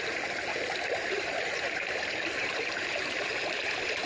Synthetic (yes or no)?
yes